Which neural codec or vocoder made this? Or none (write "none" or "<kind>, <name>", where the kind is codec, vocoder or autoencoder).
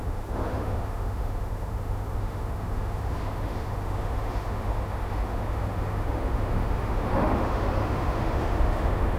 autoencoder, DAC-VAE